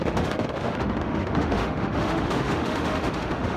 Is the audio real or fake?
fake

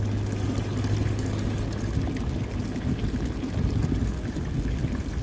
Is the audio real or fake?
real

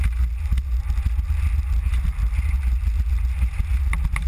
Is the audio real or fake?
real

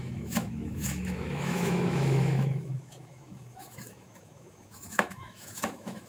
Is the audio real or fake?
fake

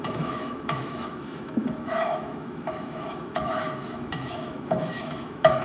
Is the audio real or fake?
fake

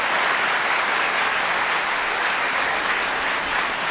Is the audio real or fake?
real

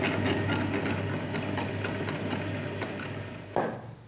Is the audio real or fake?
real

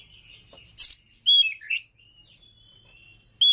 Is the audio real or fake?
real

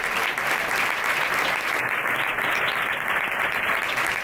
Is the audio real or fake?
real